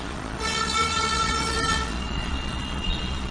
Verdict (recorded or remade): remade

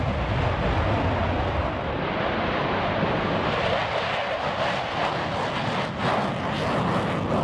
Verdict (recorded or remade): recorded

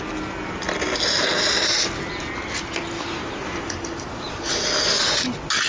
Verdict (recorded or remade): recorded